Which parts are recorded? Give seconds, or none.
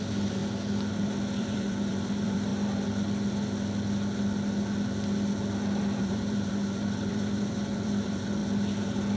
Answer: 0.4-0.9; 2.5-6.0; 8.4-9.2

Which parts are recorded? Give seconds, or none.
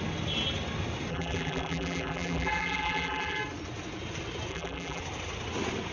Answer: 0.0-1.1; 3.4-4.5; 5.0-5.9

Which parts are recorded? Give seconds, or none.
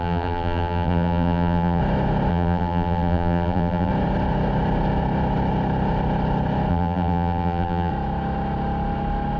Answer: 1.8-2.3; 3.9-6.7; 7.9-9.4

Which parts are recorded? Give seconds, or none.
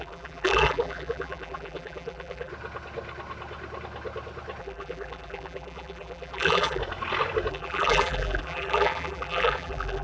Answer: 2.5-4.6; 6.8-7.5